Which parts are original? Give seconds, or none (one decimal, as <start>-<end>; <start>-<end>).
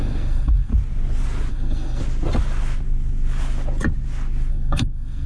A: 0.7-1.5; 2.0-4.5